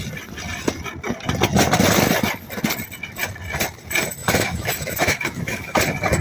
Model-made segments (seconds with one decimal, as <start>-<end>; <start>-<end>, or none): 4.2-5.8